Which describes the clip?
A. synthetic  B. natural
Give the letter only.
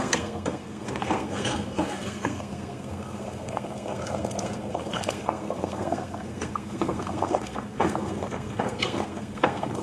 A